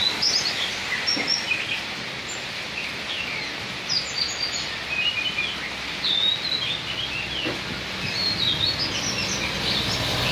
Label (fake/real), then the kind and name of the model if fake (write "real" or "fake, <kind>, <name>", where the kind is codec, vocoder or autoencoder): real